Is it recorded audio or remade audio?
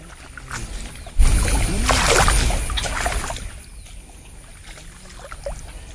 recorded